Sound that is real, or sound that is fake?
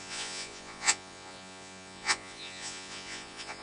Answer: fake